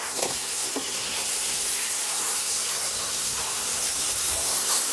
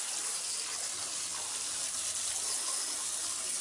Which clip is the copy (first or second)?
first